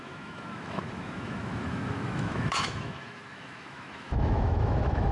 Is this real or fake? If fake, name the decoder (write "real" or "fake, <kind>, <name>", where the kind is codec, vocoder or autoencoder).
fake, autoencoder, DAC-VAE